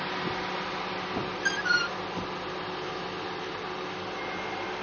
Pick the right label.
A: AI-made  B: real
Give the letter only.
B